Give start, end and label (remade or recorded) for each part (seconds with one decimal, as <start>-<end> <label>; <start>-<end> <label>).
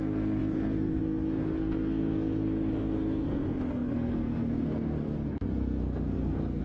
0.0-6.6 remade